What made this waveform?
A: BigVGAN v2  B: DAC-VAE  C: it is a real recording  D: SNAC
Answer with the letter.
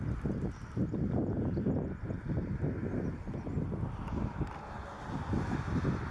C